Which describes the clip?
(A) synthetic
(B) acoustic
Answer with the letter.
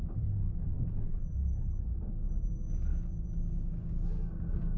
B